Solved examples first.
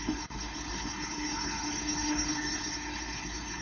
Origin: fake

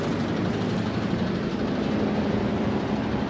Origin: real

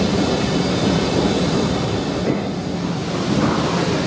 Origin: real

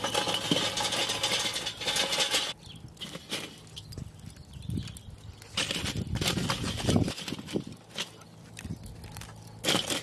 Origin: real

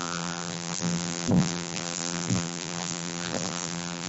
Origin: fake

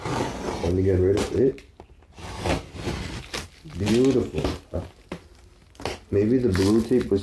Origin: real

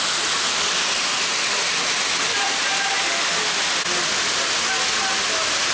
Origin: real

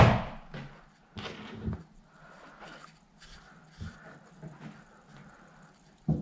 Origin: real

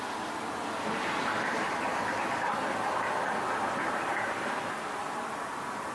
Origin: real